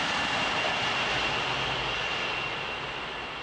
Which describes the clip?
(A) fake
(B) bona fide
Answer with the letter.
B